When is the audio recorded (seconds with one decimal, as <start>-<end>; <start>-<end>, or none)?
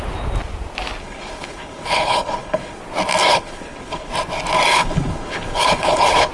0.0-1.0; 2.8-3.3; 4.1-4.7